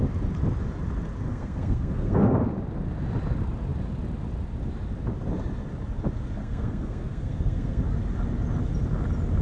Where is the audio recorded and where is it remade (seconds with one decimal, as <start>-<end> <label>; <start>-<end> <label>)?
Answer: 0.0-1.3 recorded; 1.3-2.4 remade; 2.4-6.4 recorded; 6.4-7.8 remade; 7.8-9.4 recorded